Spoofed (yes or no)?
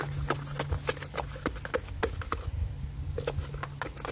no